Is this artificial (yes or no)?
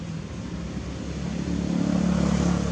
no